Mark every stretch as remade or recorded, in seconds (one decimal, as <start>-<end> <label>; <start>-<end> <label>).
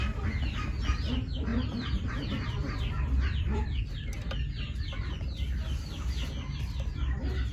0.0-1.5 recorded; 1.5-3.8 remade; 3.8-7.5 recorded